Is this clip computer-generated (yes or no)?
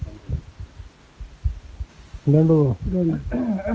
no